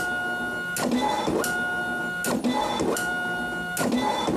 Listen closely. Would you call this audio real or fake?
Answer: real